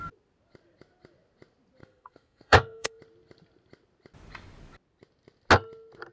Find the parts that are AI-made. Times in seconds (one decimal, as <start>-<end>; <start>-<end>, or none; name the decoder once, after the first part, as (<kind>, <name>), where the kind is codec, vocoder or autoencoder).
1.8-3.0 (codec, SNAC)